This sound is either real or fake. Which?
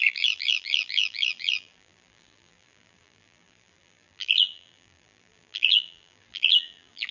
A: fake